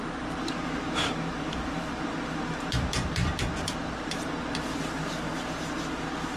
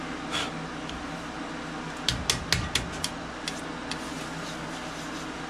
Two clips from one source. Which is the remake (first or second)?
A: first